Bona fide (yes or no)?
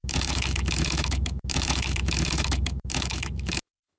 no